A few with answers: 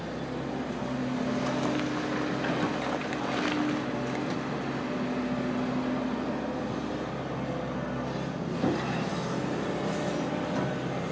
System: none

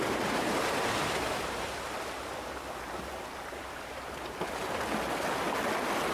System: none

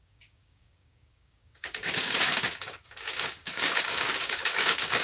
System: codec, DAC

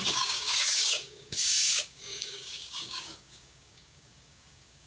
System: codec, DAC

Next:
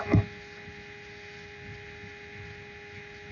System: none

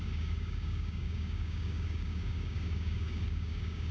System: codec, DAC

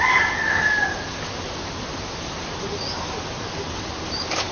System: none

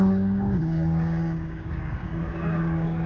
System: codec, DAC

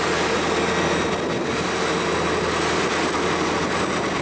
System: none